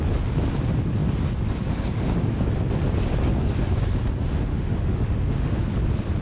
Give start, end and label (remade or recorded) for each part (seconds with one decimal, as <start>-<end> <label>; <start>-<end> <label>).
0.0-4.5 recorded; 4.5-5.6 remade; 5.6-6.2 recorded